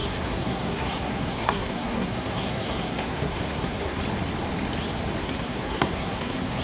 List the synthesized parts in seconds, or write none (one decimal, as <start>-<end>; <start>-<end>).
0.0-4.0; 5.2-6.6